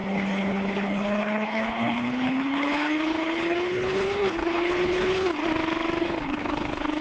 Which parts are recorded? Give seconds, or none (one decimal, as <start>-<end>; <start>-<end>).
5.4-6.0